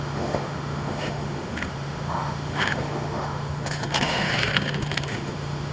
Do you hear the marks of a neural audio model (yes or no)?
yes